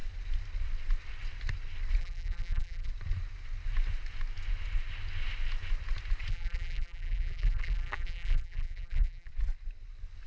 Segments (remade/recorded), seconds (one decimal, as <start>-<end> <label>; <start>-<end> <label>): 0.0-2.0 recorded; 2.0-2.9 remade; 2.9-6.3 recorded; 6.3-9.3 remade; 9.3-10.3 recorded